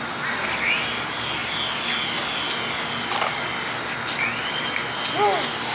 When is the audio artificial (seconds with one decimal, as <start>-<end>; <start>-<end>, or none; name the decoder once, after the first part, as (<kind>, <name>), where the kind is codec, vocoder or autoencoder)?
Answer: none